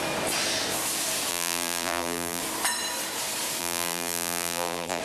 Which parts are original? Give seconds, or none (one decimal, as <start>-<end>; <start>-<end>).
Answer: 0.0-1.3; 2.4-3.6